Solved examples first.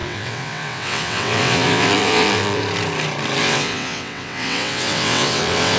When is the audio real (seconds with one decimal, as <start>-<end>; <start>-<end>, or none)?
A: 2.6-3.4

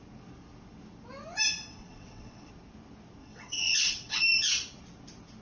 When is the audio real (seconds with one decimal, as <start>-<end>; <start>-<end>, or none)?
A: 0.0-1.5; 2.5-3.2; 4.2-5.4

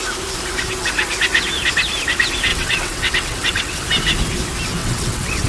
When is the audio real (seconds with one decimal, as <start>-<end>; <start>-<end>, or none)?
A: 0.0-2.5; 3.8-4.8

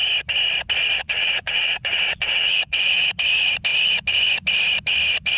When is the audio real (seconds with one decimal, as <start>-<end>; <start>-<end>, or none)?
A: 0.0-1.0; 3.1-5.4

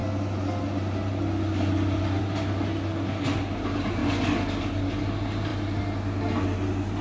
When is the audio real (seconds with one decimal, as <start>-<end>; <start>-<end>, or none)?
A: 0.0-7.0